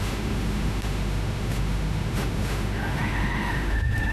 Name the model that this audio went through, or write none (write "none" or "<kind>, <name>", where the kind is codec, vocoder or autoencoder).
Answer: autoencoder, DAC-VAE